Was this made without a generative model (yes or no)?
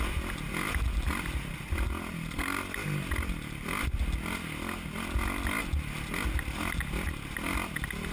yes